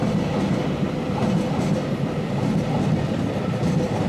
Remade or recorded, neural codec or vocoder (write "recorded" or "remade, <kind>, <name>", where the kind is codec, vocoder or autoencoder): recorded